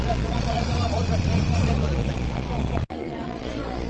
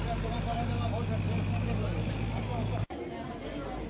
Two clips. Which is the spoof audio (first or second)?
first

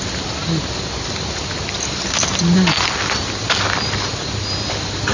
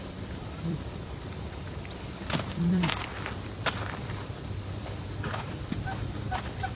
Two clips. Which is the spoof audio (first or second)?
second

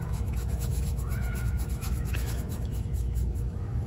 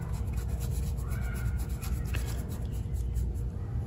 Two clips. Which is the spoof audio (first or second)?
first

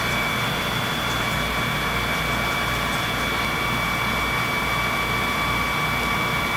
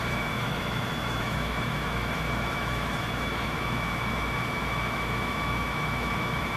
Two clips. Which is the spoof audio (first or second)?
second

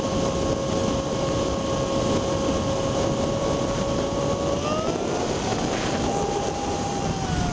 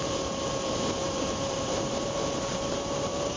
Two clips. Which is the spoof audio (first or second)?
second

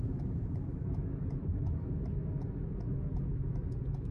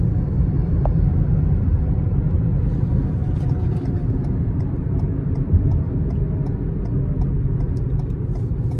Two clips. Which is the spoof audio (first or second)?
first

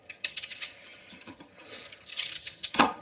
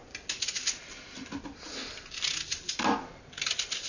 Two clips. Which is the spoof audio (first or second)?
first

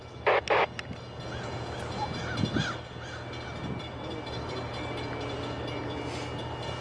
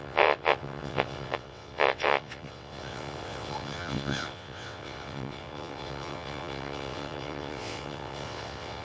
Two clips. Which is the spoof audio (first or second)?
second